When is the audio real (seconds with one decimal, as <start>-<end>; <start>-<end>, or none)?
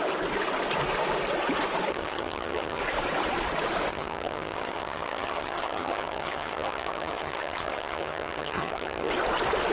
0.0-1.9; 2.8-3.9; 9.1-9.7